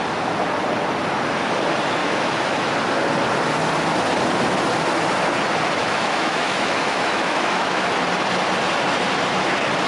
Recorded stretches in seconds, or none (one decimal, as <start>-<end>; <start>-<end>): 0.0-2.0; 2.7-5.8; 7.9-9.9